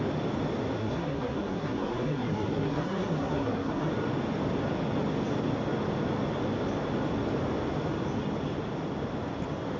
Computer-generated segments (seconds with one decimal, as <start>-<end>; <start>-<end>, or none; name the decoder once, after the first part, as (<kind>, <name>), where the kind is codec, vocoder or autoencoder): 0.8-3.9 (codec, SNAC)